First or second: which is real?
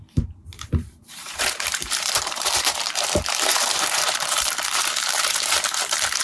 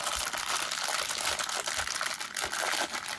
second